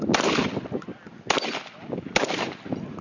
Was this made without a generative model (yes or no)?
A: yes